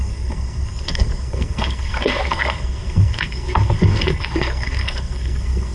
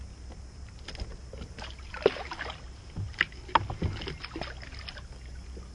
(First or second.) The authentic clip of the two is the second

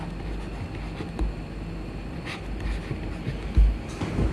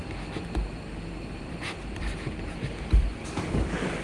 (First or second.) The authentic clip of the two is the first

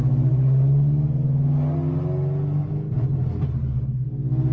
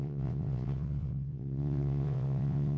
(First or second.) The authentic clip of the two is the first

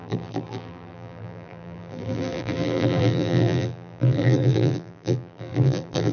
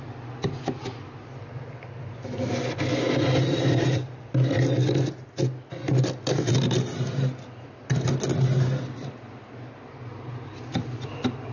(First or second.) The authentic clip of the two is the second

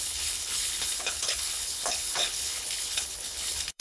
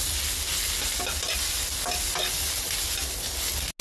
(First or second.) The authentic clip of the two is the second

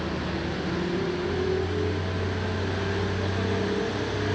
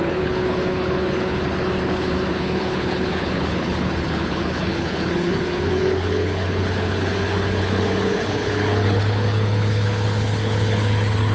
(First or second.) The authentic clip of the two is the first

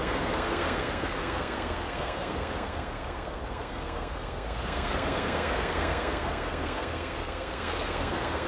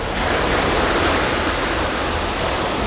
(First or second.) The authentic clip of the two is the second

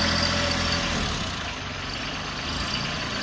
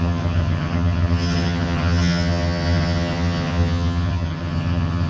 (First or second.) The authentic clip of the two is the first